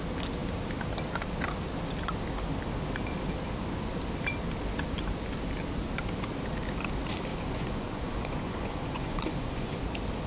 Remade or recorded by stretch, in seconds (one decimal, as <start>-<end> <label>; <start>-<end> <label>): 0.0-7.3 recorded; 7.3-9.8 remade; 9.8-10.3 recorded